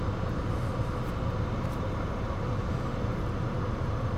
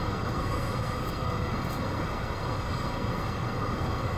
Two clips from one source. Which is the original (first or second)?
first